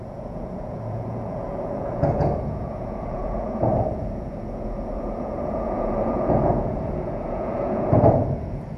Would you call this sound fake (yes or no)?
yes